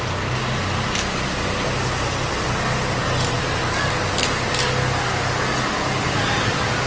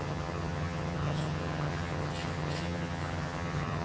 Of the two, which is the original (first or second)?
first